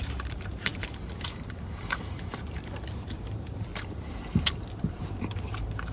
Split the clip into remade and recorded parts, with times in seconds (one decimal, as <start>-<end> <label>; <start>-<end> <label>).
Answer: 0.0-3.7 remade; 3.7-4.9 recorded; 4.9-5.9 remade